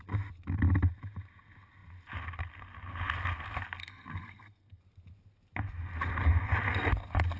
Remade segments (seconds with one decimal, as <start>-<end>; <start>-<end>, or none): 3.8-4.8